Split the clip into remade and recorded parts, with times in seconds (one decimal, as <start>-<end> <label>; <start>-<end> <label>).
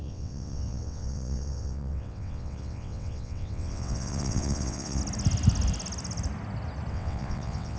0.0-5.0 remade; 5.0-6.9 recorded; 6.9-7.8 remade